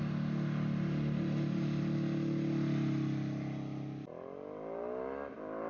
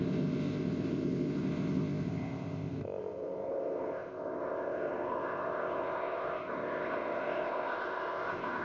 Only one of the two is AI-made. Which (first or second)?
second